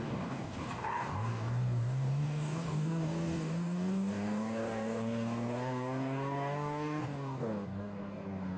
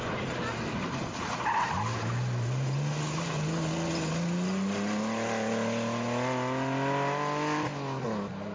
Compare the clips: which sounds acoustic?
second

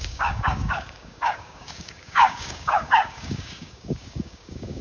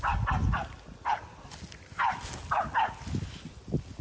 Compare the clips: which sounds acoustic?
second